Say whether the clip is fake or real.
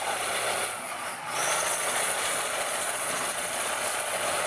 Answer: fake